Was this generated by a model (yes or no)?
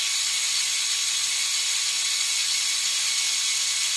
no